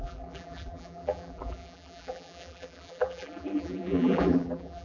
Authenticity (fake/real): fake